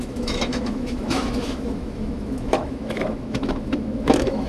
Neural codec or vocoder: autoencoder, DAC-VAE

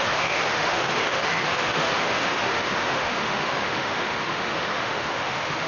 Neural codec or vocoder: autoencoder, DAC-VAE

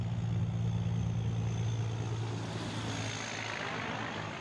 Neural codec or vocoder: none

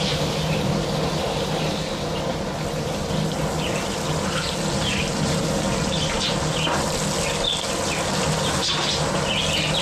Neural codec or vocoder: none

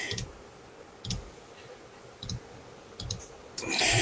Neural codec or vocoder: none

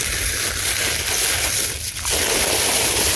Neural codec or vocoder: none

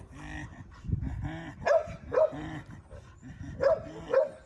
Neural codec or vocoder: none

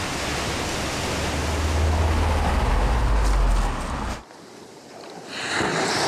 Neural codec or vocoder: none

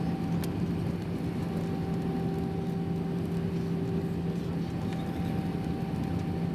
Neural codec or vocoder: none